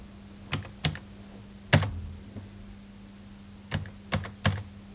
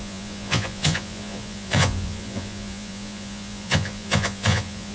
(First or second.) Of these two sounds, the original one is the first